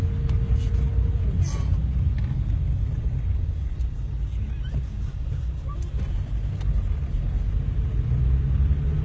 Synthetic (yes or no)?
no